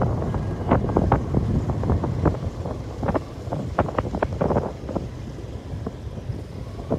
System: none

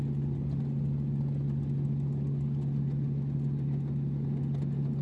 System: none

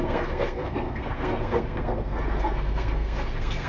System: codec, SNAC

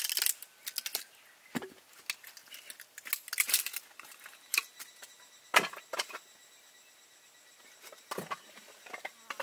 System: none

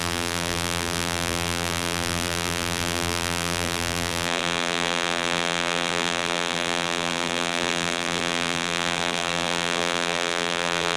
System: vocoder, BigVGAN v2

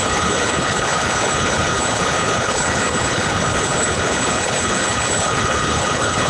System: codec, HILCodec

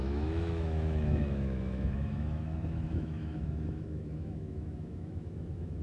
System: autoencoder, DAC-VAE